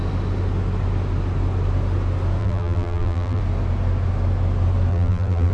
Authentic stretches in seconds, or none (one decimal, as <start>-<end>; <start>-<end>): 0.0-2.4; 3.4-4.9